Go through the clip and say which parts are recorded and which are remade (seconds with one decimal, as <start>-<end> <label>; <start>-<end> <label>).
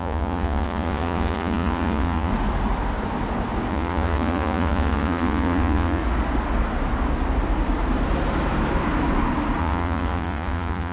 0.0-2.3 remade; 2.3-3.7 recorded; 3.7-6.0 remade; 6.0-9.6 recorded; 9.6-10.9 remade